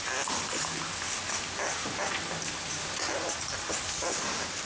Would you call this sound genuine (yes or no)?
yes